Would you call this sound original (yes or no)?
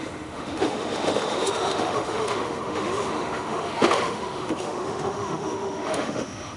no